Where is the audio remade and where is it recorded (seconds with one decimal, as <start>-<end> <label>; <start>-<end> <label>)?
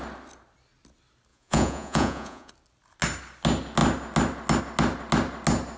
0.0-1.3 recorded; 1.3-2.5 remade; 2.5-5.8 recorded